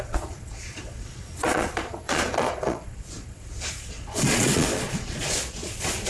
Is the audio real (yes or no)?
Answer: no